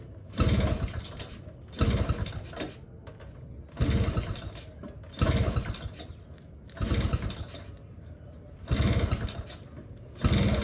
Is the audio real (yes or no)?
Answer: yes